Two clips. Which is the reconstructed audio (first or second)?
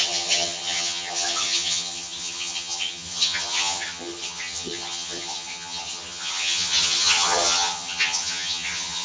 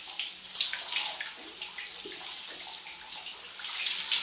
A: first